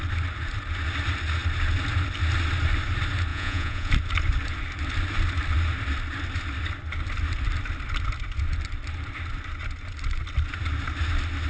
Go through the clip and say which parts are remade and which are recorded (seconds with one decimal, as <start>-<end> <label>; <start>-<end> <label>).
0.0-3.3 recorded; 3.3-3.9 remade; 3.9-11.5 recorded